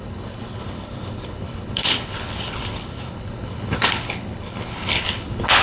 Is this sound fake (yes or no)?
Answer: yes